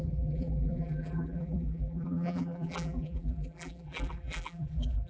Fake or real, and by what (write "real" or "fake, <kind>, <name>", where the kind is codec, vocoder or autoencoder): fake, vocoder, BigVGAN v2